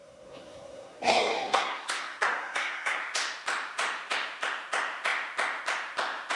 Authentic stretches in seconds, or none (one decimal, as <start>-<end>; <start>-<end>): 3.0-6.4